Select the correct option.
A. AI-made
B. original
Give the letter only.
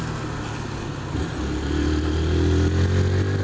B